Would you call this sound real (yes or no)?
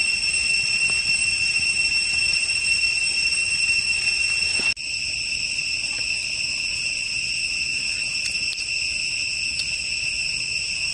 yes